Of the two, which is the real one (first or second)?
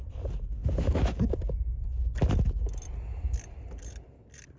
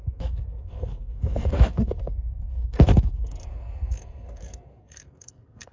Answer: first